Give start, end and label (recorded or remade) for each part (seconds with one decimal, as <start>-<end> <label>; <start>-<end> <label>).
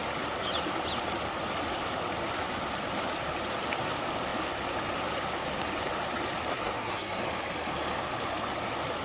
0.0-6.5 recorded; 6.5-7.2 remade; 7.2-9.0 recorded